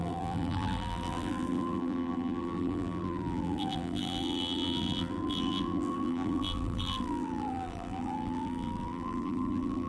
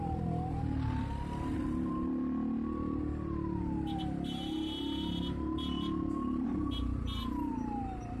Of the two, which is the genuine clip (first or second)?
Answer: second